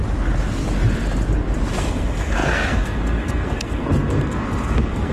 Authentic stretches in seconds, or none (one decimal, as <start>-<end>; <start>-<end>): 0.0-1.7